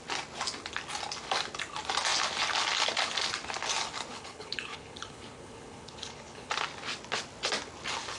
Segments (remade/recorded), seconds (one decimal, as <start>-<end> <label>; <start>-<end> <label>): 0.0-4.1 recorded; 4.1-6.5 remade; 6.5-8.2 recorded